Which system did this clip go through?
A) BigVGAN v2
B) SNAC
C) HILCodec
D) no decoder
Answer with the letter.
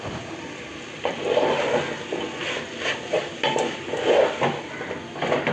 D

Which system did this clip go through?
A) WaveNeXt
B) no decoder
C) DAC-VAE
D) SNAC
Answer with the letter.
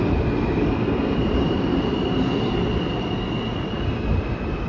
B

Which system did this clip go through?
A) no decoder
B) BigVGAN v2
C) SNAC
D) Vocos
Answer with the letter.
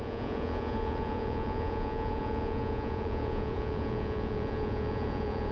D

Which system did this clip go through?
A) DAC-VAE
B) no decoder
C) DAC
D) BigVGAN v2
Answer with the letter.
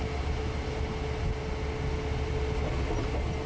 B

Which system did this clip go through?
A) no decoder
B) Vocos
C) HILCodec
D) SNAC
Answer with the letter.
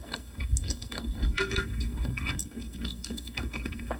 D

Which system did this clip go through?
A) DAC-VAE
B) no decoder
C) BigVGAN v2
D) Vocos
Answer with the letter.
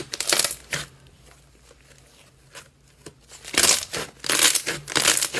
B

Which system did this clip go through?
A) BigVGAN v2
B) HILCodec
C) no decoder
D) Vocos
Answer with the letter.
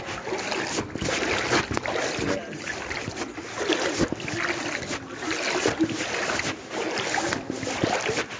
C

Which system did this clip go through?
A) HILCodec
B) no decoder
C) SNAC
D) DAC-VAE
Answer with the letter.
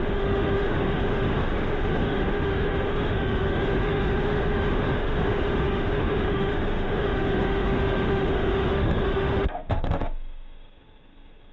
D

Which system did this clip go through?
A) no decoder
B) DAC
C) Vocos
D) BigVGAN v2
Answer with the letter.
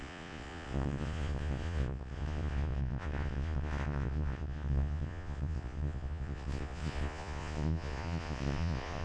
C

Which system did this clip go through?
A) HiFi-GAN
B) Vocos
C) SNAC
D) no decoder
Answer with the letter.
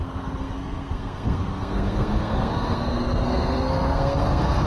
C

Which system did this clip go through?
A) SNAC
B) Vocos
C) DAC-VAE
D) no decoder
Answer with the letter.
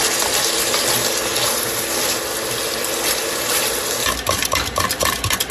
D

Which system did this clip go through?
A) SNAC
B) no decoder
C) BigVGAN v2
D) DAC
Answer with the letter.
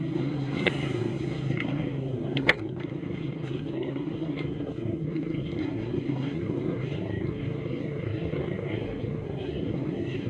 A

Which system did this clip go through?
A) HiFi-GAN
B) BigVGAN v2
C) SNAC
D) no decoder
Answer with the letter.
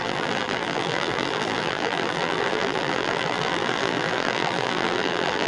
B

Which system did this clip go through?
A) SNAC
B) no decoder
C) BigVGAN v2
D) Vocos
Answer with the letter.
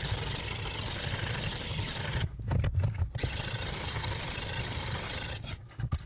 B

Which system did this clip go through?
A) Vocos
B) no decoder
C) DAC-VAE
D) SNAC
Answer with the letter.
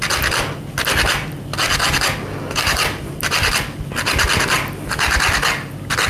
B